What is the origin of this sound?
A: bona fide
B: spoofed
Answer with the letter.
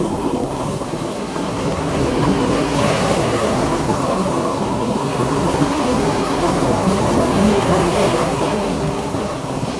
B